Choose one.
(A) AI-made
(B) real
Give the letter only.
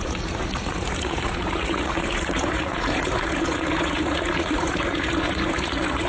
A